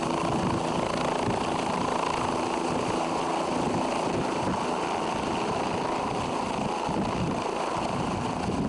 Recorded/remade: recorded